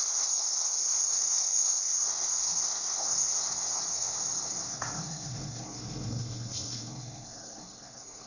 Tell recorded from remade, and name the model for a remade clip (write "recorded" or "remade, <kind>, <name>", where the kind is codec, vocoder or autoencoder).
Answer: remade, codec, SNAC